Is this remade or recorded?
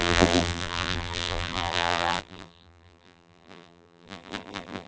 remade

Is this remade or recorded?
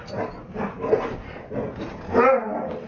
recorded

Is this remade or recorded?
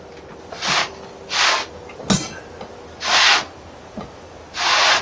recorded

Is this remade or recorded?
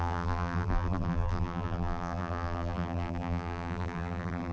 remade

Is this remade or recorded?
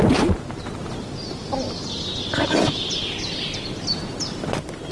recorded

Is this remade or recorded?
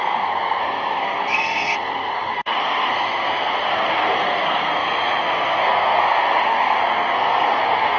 remade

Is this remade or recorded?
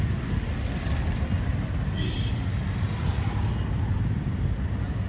recorded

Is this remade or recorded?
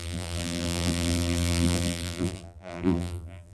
remade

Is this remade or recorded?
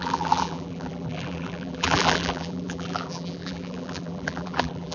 remade